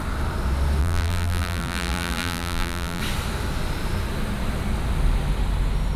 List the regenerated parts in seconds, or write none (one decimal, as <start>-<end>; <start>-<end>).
0.8-3.0